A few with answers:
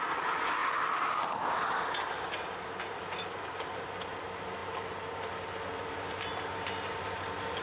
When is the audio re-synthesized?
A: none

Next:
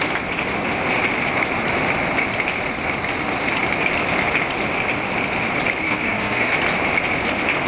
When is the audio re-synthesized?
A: 5.8-6.5 (codec, SNAC)